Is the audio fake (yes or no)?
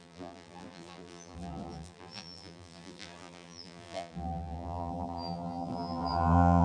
yes